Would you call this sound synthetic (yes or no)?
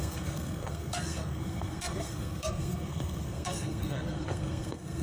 yes